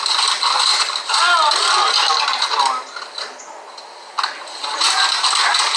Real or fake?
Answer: real